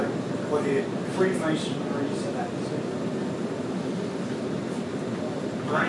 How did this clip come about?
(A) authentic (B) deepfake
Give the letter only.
A